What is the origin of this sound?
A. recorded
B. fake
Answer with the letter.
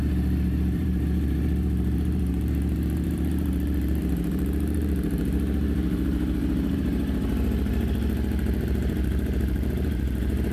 B